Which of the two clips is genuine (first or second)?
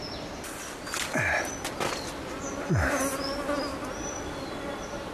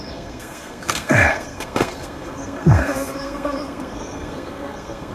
first